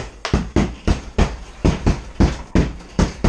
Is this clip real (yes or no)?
yes